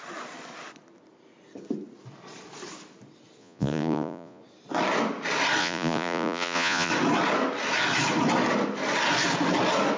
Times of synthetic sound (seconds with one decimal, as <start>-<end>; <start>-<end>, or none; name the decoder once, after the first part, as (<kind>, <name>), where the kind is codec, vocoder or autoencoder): 3.4-4.4 (vocoder, Vocos); 5.6-6.9